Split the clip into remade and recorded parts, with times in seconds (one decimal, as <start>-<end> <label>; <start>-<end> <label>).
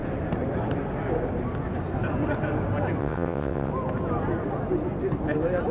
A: 0.0-3.0 recorded; 3.0-3.7 remade; 3.7-5.7 recorded